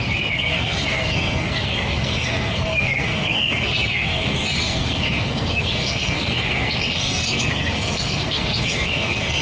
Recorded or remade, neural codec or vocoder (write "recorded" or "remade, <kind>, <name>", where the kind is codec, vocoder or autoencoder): remade, codec, SNAC